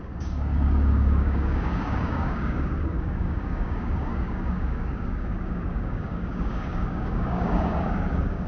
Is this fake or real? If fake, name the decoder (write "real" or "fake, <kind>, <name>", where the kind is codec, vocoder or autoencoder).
fake, codec, DAC